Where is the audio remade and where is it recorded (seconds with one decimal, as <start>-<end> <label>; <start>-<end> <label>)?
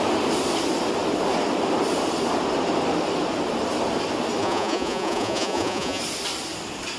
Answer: 0.0-4.4 recorded; 4.4-6.0 remade; 6.0-7.0 recorded